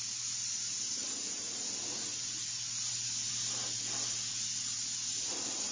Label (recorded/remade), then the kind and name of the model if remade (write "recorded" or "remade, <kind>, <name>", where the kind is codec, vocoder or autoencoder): recorded